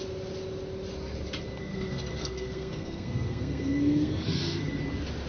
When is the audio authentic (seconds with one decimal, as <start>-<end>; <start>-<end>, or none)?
0.0-1.6; 4.8-5.3